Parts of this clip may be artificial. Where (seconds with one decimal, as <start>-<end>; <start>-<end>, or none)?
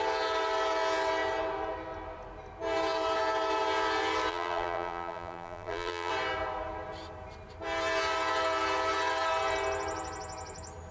4.3-6.1